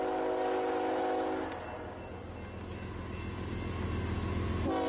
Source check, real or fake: real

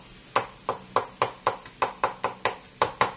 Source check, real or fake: real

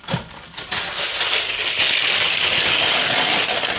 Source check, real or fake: real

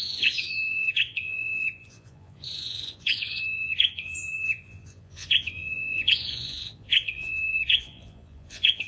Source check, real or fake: fake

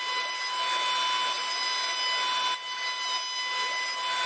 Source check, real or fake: real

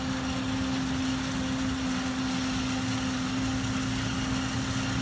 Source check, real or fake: real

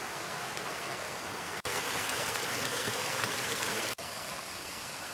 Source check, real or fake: fake